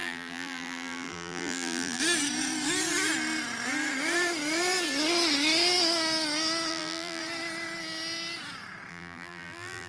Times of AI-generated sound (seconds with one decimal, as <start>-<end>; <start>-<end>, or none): 0.0-2.0; 6.7-7.2; 8.9-9.9

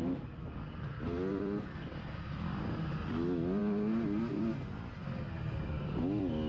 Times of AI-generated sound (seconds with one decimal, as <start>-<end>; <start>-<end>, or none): 1.3-2.8; 5.0-6.0

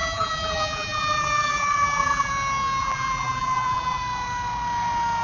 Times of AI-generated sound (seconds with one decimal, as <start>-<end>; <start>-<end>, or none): 0.0-2.3; 2.8-4.0

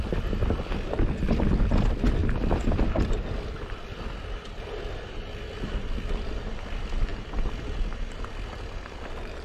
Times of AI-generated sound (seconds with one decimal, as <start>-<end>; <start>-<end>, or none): none

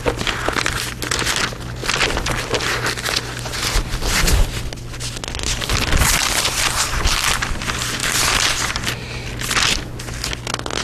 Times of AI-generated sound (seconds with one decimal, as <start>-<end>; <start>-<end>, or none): 1.8-2.3; 6.2-7.6; 8.0-8.7

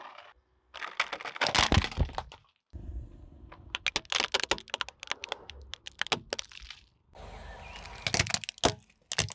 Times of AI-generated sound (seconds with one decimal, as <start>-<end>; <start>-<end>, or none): none